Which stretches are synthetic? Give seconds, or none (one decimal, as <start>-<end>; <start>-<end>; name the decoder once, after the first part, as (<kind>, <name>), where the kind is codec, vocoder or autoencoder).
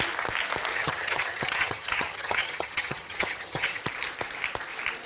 0.7-3.8 (vocoder, HiFi-GAN)